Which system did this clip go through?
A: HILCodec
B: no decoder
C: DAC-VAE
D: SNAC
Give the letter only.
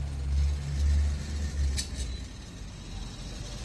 B